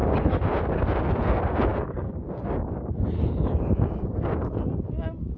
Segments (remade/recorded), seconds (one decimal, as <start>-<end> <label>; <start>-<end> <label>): 0.0-1.7 recorded; 1.7-2.9 remade; 2.9-5.4 recorded